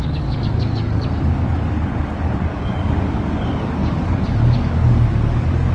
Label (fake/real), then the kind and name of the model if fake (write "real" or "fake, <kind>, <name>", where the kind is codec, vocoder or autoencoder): fake, codec, DAC